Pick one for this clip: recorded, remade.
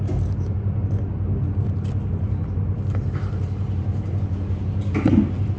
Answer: recorded